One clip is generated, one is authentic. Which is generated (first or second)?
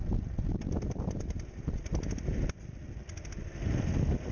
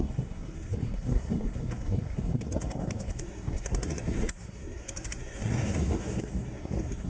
second